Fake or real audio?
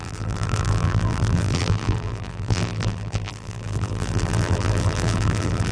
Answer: fake